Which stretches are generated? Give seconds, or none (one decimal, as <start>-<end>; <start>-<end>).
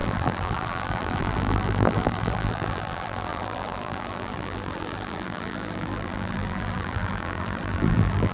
0.0-8.3